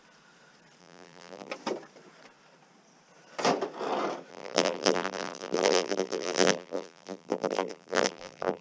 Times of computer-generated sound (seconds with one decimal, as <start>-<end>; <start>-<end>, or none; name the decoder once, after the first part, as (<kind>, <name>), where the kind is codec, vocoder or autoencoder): 0.8-1.5 (vocoder, BigVGAN v2); 4.3-8.6